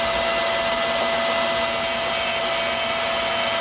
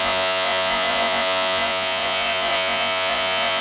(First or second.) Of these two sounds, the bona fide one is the first